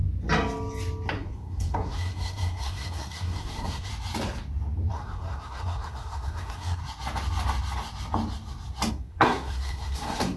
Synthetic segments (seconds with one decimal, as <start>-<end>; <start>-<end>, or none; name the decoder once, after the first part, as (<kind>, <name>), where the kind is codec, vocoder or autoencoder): 1.1-3.9 (codec, SNAC); 4.9-6.8; 8.9-10.4